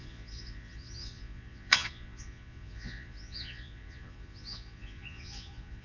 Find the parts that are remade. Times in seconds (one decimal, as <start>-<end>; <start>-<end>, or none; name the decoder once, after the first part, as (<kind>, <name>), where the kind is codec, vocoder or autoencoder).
0.0-5.8 (vocoder, Vocos)